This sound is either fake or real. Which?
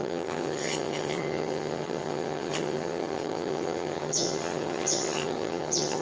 fake